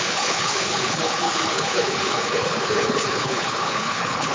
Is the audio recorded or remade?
remade